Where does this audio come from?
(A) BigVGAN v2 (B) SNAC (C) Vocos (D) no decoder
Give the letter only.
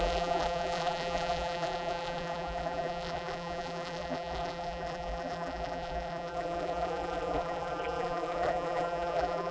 A